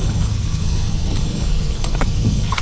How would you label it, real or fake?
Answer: fake